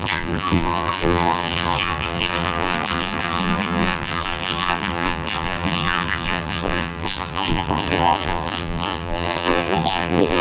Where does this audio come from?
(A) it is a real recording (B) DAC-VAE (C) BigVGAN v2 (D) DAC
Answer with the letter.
C